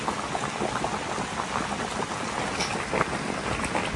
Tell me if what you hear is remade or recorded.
recorded